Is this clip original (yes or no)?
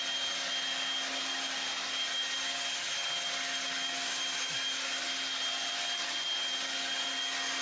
yes